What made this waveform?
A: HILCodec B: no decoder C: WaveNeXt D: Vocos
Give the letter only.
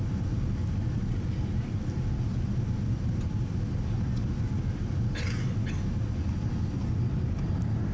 B